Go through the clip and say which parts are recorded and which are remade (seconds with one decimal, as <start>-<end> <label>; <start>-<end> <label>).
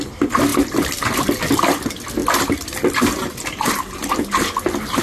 0.0-5.0 recorded